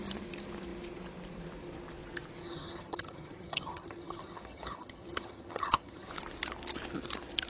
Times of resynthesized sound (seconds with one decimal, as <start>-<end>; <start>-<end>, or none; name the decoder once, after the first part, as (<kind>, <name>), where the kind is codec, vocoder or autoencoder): 2.4-6.1 (vocoder, HiFi-GAN)